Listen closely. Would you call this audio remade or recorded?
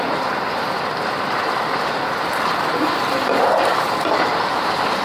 remade